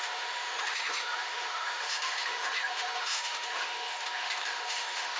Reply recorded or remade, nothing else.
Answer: remade